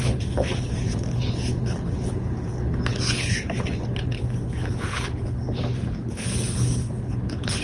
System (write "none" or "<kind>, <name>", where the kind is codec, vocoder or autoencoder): codec, HILCodec